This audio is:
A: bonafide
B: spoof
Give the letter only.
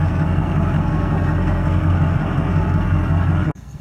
B